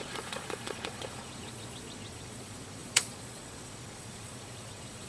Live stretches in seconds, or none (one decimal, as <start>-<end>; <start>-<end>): none